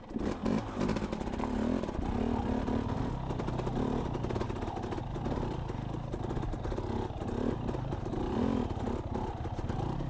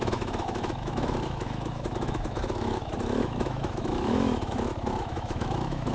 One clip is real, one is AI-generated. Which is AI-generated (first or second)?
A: second